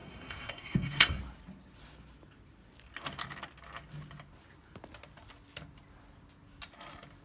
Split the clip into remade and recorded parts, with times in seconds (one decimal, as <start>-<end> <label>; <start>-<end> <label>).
0.0-1.2 remade; 1.2-7.2 recorded